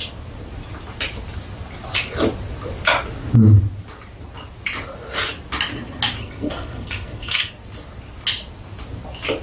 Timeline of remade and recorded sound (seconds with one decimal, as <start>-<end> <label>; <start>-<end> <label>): 0.0-6.2 recorded; 6.2-7.5 remade; 7.5-9.4 recorded